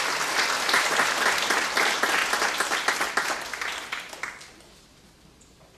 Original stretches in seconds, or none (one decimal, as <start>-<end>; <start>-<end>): 0.0-5.8